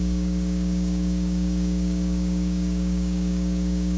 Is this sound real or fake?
fake